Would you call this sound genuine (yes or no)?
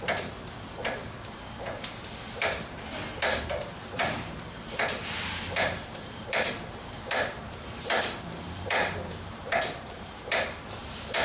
no